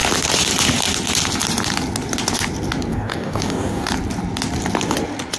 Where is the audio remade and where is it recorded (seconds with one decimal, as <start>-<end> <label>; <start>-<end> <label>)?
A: 0.0-2.9 recorded; 2.9-3.9 remade; 3.9-5.4 recorded